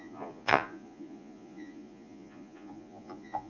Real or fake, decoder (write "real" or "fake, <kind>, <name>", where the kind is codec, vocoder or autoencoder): fake, vocoder, Vocos